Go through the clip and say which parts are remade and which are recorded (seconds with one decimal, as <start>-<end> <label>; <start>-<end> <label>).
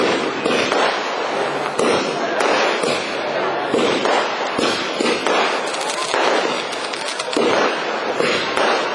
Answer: 0.0-8.9 recorded